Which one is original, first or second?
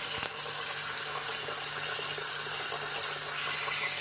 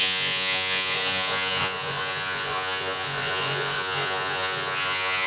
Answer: first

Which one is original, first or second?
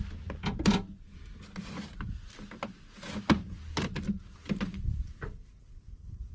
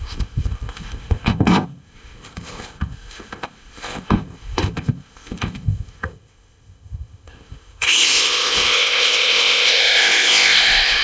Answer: first